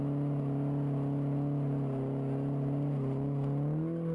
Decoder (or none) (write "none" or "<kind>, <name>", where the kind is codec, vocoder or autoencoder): none